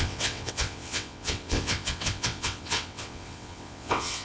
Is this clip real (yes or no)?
no